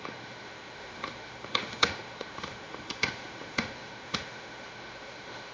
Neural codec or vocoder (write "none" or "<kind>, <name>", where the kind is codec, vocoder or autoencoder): autoencoder, DAC-VAE